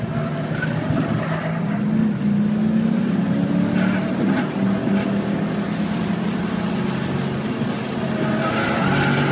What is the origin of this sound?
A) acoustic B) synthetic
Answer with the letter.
A